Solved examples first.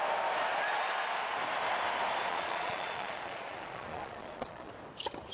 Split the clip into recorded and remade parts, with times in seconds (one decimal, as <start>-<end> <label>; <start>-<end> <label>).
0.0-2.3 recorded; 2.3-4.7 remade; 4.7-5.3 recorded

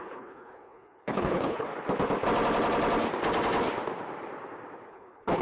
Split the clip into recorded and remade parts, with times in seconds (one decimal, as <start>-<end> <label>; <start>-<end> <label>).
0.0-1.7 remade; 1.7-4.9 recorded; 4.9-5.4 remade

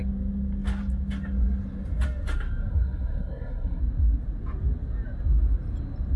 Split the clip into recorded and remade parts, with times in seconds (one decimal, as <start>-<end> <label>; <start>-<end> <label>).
0.0-2.7 recorded; 2.7-3.8 remade; 3.8-6.2 recorded